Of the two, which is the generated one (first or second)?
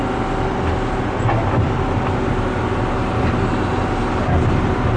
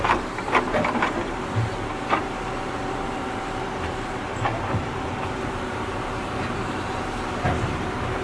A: second